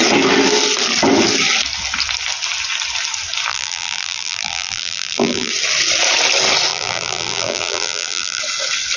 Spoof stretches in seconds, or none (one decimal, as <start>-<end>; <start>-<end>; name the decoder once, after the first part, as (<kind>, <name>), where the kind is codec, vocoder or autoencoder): 3.5-5.5 (vocoder, BigVGAN v2); 6.7-8.4